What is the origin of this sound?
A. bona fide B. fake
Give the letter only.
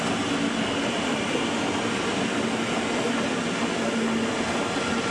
A